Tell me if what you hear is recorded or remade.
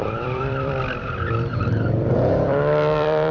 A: remade